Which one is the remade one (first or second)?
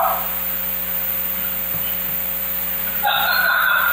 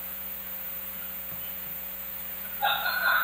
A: second